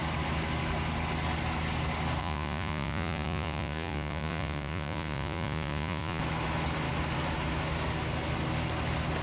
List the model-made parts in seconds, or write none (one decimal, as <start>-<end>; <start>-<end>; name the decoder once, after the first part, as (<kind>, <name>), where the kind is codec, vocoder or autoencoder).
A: 2.2-6.2 (vocoder, Vocos)